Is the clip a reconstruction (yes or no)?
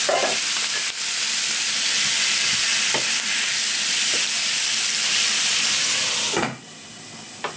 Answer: no